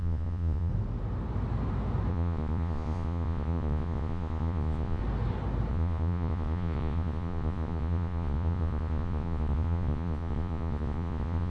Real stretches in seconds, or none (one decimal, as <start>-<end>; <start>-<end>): 0.7-2.1; 5.0-5.7